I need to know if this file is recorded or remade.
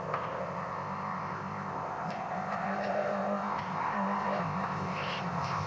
remade